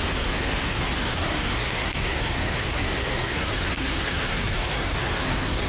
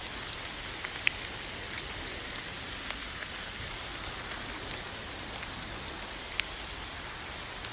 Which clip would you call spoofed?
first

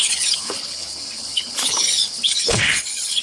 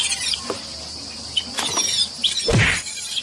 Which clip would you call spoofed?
first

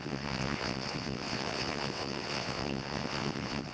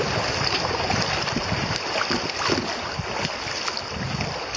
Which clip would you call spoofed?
first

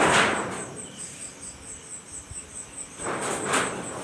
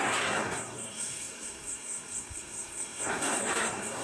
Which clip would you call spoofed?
second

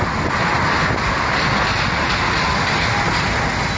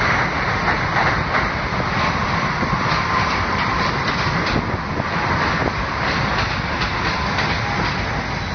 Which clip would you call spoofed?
second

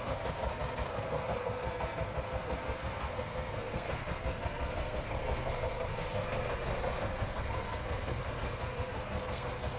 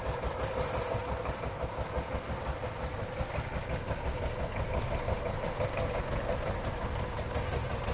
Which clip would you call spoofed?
first